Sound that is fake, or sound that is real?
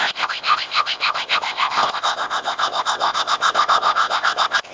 fake